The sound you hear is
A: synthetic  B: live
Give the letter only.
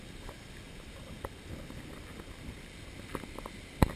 B